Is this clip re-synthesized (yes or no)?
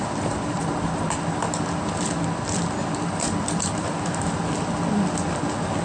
no